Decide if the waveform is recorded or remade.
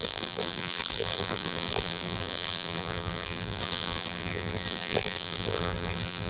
remade